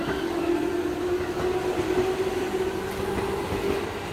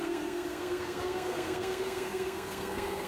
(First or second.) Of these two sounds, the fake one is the second